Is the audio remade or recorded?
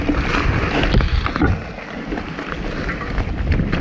recorded